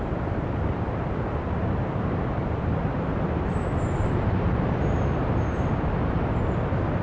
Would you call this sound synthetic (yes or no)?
yes